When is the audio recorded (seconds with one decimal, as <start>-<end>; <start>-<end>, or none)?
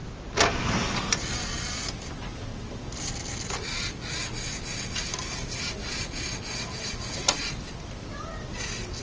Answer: 0.0-0.9; 2.5-4.9; 5.8-7.2